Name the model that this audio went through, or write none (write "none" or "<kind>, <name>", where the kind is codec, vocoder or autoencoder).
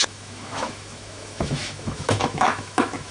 autoencoder, DAC-VAE